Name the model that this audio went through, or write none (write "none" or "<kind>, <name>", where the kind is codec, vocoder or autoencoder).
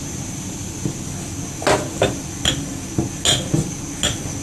none